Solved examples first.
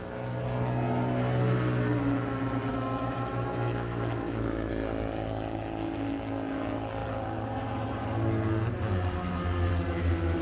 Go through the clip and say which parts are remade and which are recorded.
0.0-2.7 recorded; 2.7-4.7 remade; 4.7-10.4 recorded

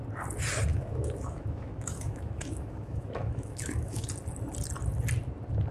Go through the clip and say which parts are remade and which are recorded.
0.0-0.7 recorded; 0.7-4.1 remade; 4.1-5.7 recorded

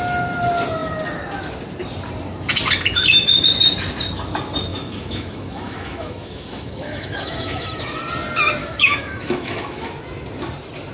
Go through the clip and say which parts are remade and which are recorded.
0.0-4.7 recorded; 4.7-8.0 remade; 8.0-8.6 recorded; 8.6-9.9 remade; 9.9-10.9 recorded

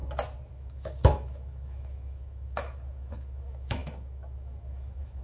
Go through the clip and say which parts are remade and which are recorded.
0.0-0.5 recorded; 0.5-5.2 remade

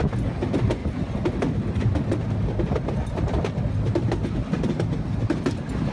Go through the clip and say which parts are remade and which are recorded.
0.0-5.9 recorded

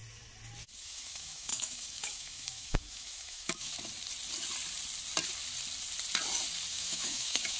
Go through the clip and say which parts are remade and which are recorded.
0.0-0.8 recorded; 0.8-3.7 remade; 3.7-6.7 recorded; 6.7-7.6 remade

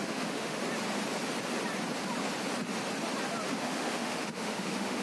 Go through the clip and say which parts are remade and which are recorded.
0.0-0.6 remade; 0.6-3.6 recorded; 3.6-5.0 remade